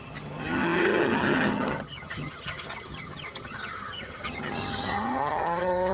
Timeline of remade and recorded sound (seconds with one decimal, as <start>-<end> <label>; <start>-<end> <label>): 0.0-5.9 remade